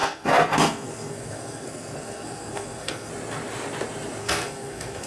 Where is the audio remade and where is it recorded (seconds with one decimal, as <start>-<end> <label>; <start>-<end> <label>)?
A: 0.0-3.1 remade; 3.1-4.2 recorded; 4.2-5.1 remade